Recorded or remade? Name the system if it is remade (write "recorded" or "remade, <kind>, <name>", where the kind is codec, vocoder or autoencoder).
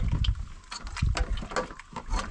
recorded